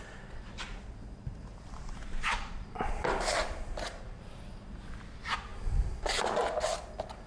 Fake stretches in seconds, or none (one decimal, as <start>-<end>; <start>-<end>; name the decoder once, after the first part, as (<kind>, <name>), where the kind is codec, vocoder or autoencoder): 1.0-4.8 (vocoder, BigVGAN v2)